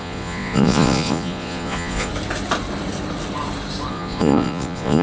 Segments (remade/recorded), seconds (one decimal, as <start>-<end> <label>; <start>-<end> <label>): 0.0-2.1 remade; 2.1-3.9 recorded; 3.9-5.0 remade